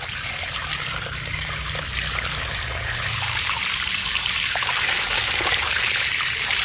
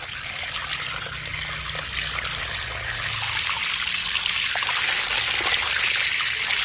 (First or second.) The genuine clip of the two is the second